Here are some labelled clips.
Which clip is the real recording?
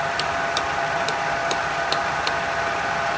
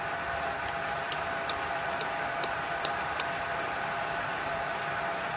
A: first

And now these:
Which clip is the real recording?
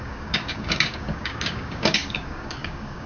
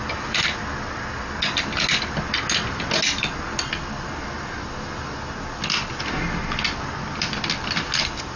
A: second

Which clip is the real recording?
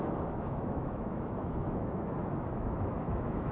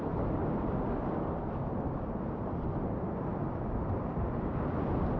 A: second